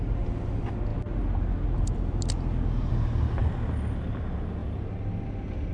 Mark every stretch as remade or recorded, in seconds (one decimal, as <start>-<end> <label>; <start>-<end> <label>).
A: 0.0-5.7 recorded